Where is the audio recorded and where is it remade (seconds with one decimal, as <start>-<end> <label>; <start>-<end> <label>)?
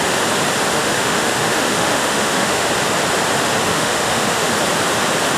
0.0-0.7 recorded; 0.7-2.7 remade; 2.7-3.7 recorded; 3.7-4.5 remade; 4.5-5.4 recorded